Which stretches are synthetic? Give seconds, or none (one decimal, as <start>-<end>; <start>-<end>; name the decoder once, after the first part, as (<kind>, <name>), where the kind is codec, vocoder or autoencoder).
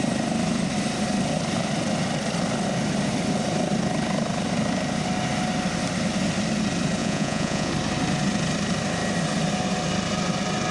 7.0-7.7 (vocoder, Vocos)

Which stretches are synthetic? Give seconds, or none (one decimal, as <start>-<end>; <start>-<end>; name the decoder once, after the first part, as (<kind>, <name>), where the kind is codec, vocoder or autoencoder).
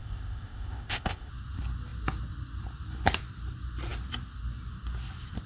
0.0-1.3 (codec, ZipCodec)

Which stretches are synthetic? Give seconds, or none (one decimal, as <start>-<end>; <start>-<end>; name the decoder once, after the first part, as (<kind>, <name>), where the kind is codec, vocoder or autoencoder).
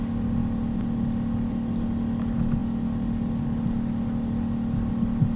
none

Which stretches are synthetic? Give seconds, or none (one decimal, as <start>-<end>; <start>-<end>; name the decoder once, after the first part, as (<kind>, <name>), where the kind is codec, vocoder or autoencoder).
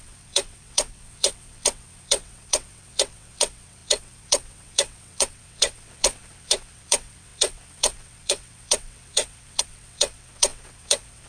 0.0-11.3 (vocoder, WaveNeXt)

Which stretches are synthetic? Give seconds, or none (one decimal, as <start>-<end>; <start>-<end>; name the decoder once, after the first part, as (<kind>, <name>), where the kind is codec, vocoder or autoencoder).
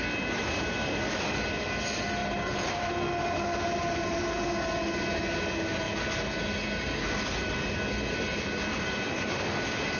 2.2-2.9 (vocoder, BigVGAN v2)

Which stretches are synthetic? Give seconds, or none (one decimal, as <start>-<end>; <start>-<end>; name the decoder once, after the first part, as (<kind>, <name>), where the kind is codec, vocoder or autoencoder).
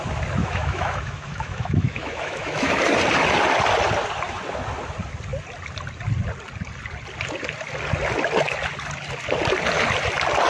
0.4-2.7 (autoencoder, DAC-VAE)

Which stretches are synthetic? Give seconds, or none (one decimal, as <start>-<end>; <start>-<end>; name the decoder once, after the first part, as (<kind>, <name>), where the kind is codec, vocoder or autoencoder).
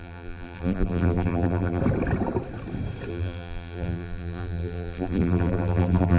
0.0-1.8 (vocoder, BigVGAN v2); 3.1-6.2